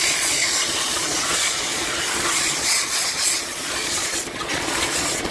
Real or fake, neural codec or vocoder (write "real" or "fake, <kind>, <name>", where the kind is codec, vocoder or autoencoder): fake, vocoder, Vocos